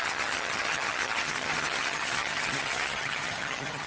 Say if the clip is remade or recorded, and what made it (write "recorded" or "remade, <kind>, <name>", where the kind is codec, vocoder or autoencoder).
remade, vocoder, HiFi-GAN